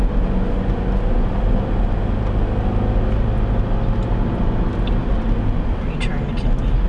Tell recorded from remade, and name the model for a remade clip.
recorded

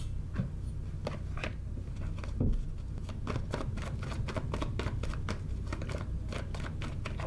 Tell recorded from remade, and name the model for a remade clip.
recorded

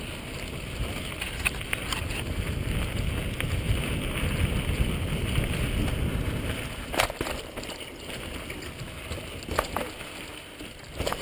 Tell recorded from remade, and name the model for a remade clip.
recorded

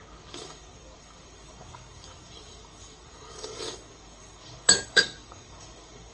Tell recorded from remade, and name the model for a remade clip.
remade, codec, DAC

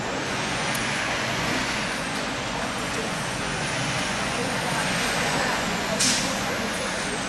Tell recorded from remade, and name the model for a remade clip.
remade, vocoder, Vocos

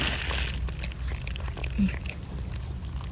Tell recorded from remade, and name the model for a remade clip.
recorded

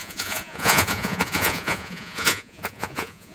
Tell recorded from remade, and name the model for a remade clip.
remade, vocoder, Vocos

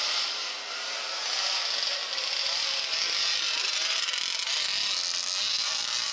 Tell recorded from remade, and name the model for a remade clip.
recorded